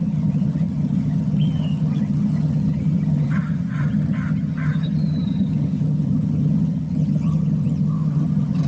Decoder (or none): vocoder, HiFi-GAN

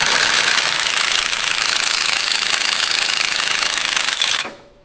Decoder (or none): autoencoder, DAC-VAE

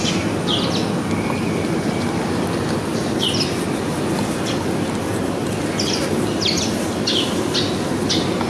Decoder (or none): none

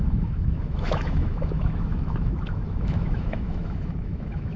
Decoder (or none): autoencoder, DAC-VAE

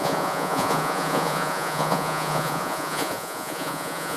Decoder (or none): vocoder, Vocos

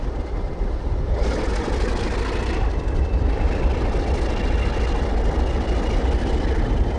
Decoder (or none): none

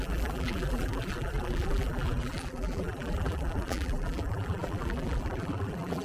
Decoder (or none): vocoder, BigVGAN v2